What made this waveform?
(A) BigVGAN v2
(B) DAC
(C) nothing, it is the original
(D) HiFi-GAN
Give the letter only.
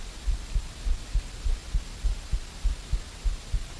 C